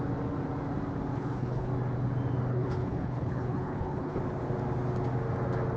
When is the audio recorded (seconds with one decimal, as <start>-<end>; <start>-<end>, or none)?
0.0-1.1; 1.7-2.5; 4.2-5.8